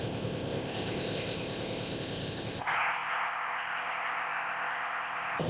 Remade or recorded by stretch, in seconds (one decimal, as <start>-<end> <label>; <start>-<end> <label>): 0.0-5.5 remade